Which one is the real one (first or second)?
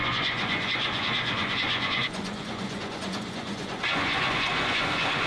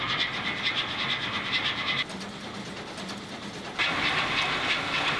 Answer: second